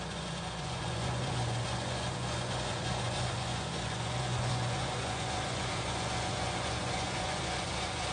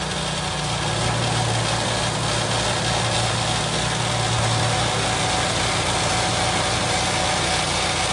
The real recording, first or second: second